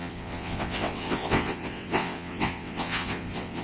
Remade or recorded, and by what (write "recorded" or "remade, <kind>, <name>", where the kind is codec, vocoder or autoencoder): remade, vocoder, WaveNeXt